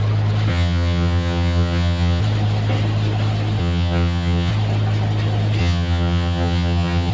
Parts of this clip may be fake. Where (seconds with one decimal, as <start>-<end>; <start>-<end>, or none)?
0.5-2.2; 3.6-4.5; 5.6-7.1